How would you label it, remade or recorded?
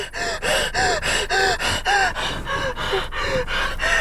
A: recorded